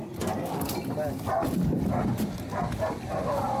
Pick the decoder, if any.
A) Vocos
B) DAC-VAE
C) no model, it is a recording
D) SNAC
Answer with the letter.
C